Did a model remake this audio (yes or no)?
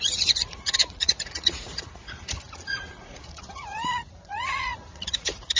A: yes